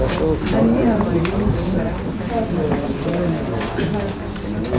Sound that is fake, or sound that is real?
real